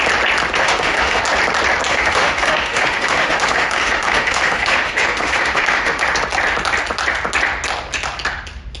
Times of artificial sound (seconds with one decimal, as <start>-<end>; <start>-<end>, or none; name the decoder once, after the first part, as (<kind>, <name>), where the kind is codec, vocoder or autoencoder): 0.6-1.2 (autoencoder, DAC-VAE); 1.9-6.0